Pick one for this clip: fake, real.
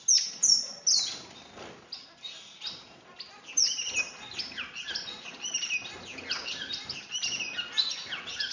real